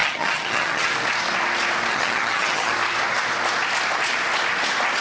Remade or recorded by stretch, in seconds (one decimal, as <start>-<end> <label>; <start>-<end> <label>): 0.0-0.9 remade; 0.9-1.9 recorded; 1.9-2.7 remade; 2.7-5.0 recorded